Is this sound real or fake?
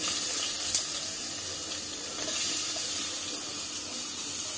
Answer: real